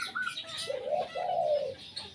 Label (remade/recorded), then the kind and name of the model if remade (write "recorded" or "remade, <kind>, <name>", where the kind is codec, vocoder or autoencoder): recorded